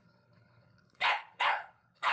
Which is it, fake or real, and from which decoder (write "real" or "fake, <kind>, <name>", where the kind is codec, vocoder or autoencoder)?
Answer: fake, codec, HILCodec